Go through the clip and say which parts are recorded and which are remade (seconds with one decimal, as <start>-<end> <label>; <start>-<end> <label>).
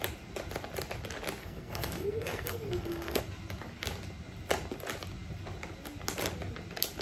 0.0-1.4 recorded; 1.4-3.2 remade; 3.2-7.0 recorded